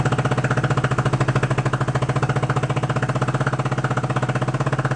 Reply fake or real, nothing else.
real